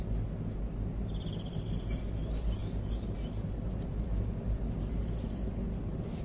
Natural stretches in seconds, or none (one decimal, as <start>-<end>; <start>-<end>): 0.0-6.2